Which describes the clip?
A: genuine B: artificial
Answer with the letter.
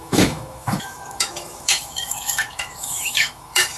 B